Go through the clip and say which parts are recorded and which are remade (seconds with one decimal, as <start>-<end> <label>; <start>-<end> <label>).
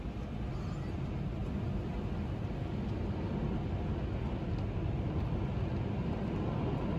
0.0-7.0 recorded